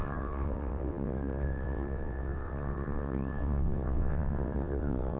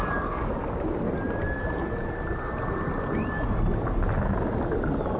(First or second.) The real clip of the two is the second